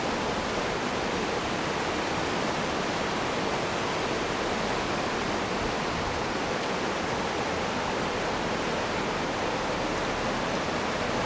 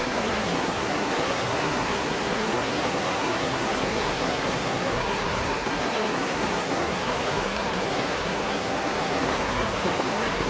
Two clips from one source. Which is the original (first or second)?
first